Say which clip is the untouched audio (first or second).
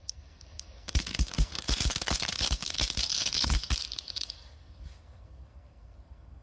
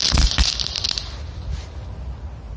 second